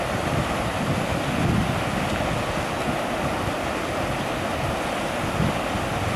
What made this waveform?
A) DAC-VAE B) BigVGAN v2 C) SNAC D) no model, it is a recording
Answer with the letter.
D